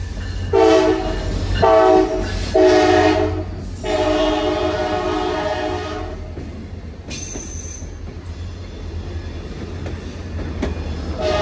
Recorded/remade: recorded